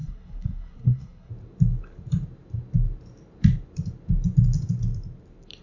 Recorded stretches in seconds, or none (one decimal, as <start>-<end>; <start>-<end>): 1.3-5.6